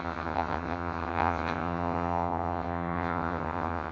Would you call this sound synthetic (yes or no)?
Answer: yes